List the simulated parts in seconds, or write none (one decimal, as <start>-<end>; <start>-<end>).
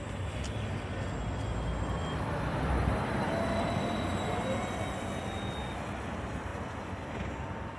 2.0-2.7; 6.5-7.1